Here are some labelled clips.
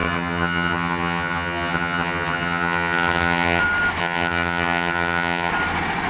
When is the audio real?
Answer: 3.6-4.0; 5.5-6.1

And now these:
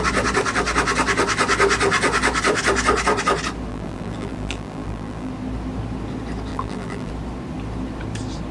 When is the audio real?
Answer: 0.0-3.7; 5.3-6.5; 7.1-8.5

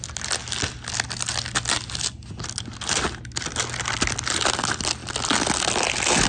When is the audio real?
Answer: 0.0-6.3

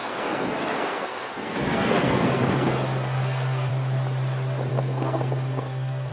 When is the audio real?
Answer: 3.7-4.7